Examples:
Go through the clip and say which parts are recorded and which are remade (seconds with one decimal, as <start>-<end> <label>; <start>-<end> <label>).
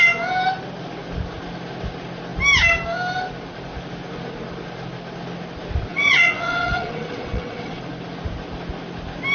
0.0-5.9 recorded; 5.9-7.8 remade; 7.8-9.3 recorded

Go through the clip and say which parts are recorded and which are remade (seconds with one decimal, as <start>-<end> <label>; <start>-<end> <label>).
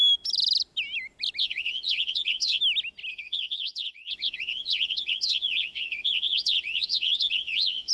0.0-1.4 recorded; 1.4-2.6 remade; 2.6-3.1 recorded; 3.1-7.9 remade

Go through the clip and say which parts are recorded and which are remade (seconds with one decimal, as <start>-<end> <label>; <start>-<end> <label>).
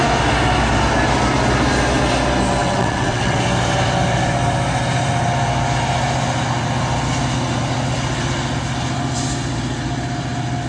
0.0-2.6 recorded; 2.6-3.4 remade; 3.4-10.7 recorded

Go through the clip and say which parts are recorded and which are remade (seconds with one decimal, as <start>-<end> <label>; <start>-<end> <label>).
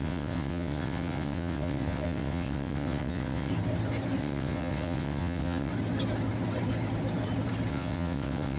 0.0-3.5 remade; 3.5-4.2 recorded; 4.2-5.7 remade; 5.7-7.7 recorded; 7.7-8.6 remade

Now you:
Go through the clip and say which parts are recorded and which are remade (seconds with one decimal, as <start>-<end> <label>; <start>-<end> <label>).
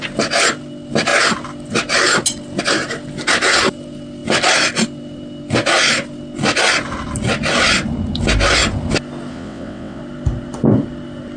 0.0-9.3 recorded; 9.3-10.0 remade; 10.0-11.4 recorded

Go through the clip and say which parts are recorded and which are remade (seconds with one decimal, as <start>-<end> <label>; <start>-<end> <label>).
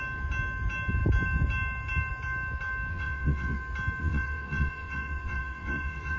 0.0-2.9 recorded; 2.9-3.6 remade; 3.6-4.0 recorded; 4.0-6.2 remade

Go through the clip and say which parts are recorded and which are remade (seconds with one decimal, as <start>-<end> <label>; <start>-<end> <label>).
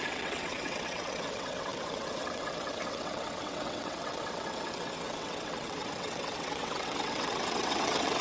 0.0-8.2 remade